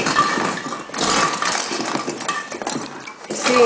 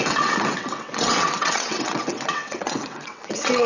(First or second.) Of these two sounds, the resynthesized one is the second